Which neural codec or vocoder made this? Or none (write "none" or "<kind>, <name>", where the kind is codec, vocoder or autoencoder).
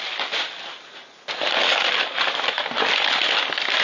none